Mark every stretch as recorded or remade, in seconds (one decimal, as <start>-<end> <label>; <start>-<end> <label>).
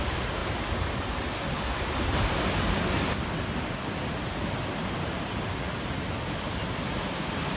0.0-0.4 recorded; 0.4-1.0 remade; 1.0-7.6 recorded